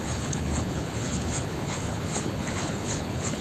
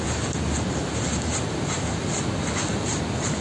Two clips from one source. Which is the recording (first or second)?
second